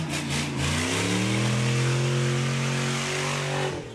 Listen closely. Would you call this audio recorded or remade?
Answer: recorded